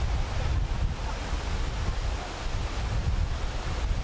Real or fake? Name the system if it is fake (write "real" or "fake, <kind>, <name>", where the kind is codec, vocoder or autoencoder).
real